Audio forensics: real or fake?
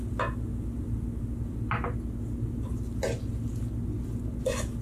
real